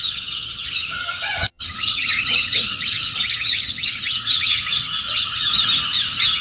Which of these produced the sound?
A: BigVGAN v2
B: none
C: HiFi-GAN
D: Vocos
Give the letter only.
C